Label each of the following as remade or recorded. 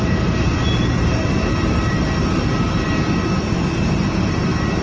remade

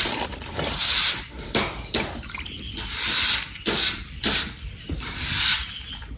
remade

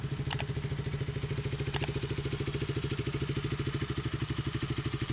recorded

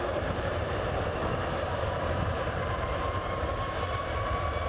remade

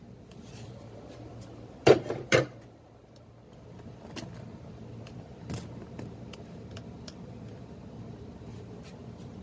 remade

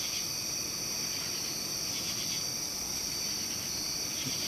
recorded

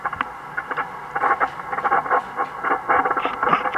recorded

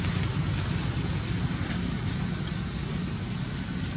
recorded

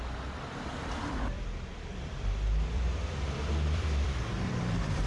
remade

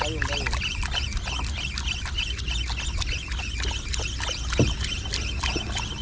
recorded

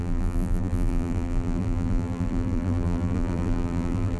remade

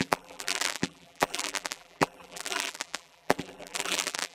remade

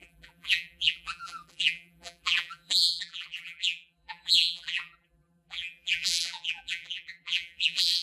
remade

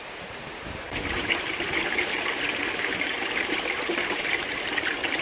remade